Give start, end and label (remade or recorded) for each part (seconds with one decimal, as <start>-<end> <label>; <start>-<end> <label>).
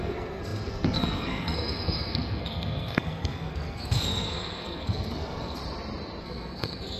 0.0-5.6 remade; 5.6-6.2 recorded; 6.2-7.0 remade